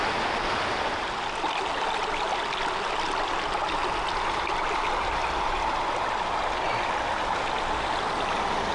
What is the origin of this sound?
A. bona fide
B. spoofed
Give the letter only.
A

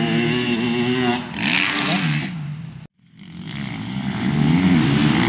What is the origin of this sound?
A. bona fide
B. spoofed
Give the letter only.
A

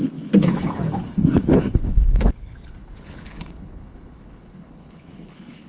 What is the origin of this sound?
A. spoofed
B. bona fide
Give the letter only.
A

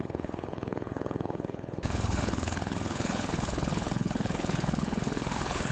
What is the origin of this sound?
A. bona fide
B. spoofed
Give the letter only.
B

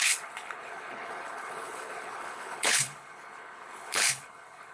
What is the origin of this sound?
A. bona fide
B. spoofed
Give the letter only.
B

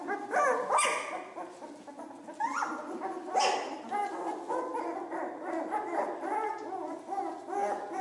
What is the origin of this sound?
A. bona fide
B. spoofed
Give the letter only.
A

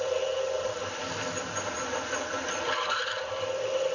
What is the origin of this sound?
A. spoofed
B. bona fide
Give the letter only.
B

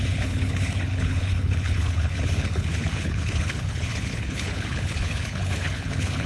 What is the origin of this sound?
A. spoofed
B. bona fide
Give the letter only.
A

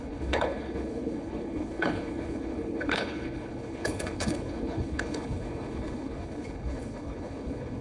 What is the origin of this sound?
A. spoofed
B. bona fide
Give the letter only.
A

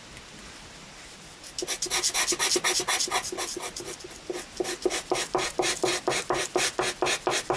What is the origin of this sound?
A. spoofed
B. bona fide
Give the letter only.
B